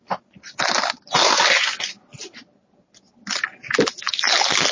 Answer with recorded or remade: recorded